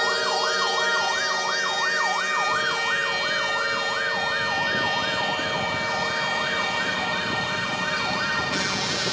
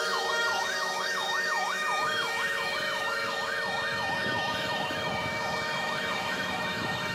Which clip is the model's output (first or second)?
second